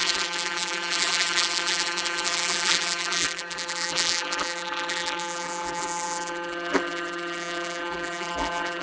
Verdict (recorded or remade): remade